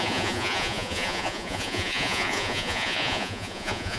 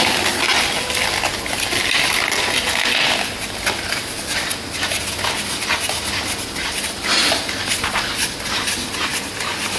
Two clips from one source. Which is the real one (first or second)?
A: second